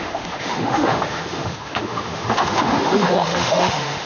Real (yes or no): no